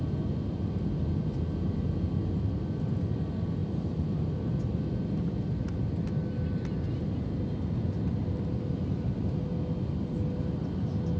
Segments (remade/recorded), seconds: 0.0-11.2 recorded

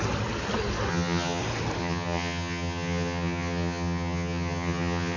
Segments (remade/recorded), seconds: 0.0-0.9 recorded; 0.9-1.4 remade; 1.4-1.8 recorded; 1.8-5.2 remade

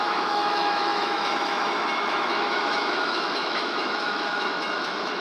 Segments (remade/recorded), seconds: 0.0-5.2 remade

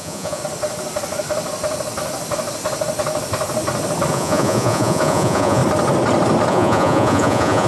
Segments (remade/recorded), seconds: 0.0-0.4 remade; 0.4-4.1 recorded; 4.1-5.6 remade; 5.6-6.5 recorded; 6.5-7.7 remade

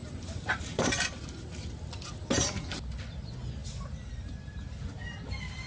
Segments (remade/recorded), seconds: 0.0-1.1 remade; 1.1-3.6 recorded; 3.6-4.1 remade; 4.1-5.7 recorded